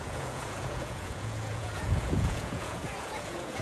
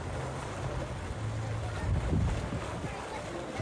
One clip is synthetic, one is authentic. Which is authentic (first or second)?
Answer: second